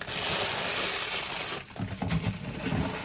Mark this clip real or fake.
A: real